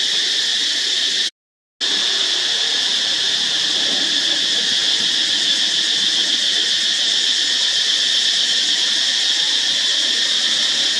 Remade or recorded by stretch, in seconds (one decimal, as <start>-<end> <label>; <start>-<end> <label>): 0.0-11.0 recorded

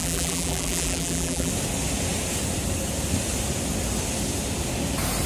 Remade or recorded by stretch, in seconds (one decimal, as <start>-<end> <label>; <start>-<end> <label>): 0.0-1.5 remade; 1.5-5.3 recorded

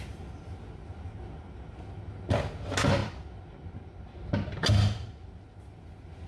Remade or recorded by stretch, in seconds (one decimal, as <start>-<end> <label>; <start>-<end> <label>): 0.0-3.0 recorded; 3.0-4.2 remade; 4.2-6.3 recorded

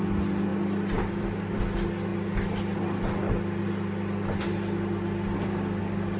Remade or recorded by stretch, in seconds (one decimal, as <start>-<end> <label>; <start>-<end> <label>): 0.0-0.5 remade; 0.5-1.2 recorded; 1.2-2.1 remade; 2.1-5.8 recorded; 5.8-6.2 remade

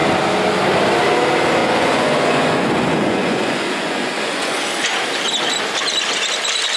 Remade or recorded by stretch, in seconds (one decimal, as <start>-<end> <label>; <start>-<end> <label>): 0.0-1.6 recorded; 1.6-4.7 remade; 4.7-6.8 recorded

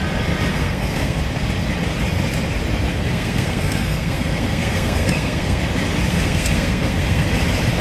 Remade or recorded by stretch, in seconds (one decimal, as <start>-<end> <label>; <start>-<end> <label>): 0.0-0.5 recorded; 0.5-1.2 remade; 1.2-2.9 recorded; 2.9-5.6 remade; 5.6-6.1 recorded; 6.1-7.3 remade; 7.3-7.8 recorded